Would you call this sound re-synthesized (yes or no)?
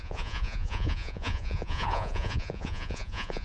yes